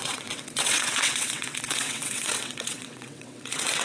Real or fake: fake